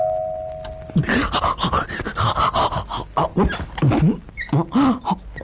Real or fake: real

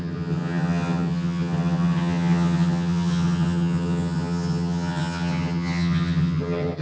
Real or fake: fake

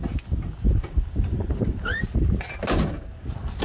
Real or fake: real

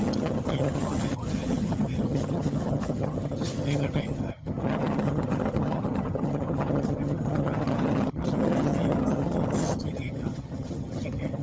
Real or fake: fake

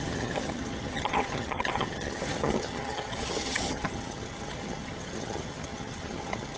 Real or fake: fake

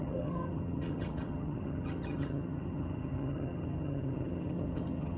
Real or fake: fake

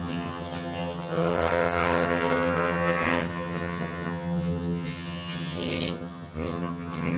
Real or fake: fake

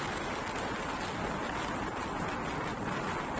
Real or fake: real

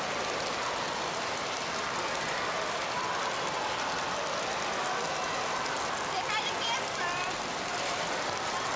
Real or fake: real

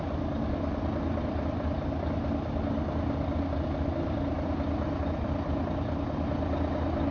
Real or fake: real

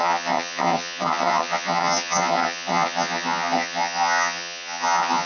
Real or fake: fake